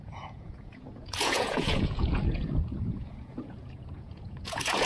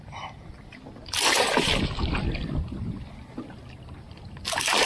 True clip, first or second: second